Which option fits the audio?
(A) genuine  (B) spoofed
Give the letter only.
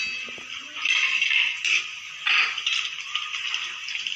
A